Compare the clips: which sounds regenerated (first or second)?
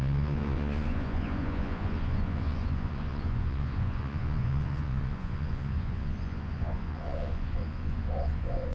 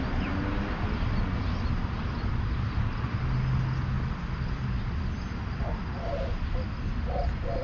first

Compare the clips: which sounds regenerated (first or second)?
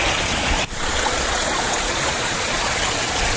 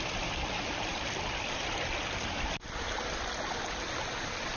first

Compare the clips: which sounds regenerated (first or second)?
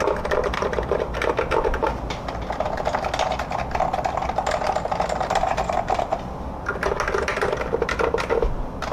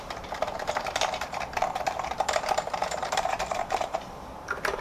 second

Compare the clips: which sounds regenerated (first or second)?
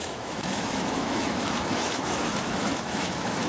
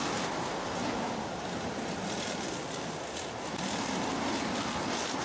first